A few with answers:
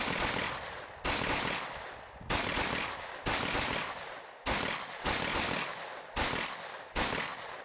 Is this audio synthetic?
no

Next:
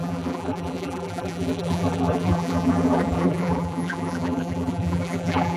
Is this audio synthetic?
yes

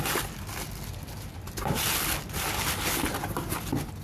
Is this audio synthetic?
no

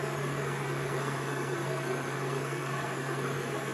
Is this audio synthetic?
yes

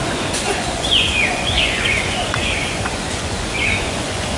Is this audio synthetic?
yes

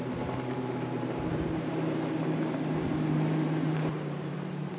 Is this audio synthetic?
yes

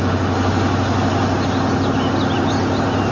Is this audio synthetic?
no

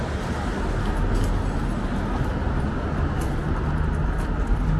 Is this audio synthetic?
no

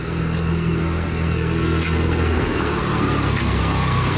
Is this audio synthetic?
yes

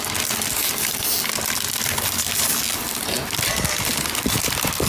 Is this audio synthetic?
no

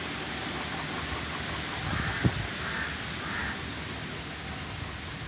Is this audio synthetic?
no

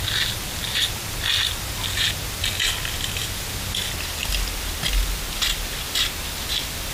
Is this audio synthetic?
no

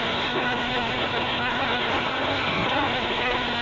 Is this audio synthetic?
yes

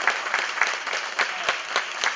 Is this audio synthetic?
no